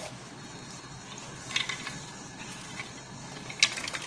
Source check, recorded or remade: recorded